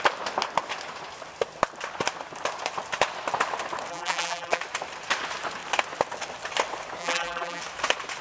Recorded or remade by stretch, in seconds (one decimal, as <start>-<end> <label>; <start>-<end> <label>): 0.0-3.9 recorded; 3.9-4.6 remade; 4.6-7.0 recorded; 7.0-7.6 remade; 7.6-8.2 recorded